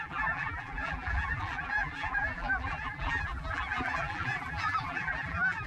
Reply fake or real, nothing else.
fake